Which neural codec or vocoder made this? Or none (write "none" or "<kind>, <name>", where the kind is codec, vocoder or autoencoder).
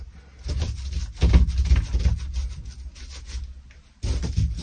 none